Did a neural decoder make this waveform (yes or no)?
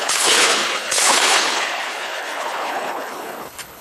yes